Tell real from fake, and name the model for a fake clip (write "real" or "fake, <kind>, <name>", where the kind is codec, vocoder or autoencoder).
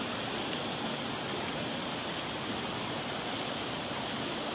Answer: real